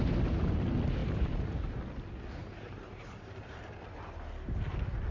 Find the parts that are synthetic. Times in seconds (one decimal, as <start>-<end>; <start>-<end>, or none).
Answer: 1.0-1.8; 2.4-3.6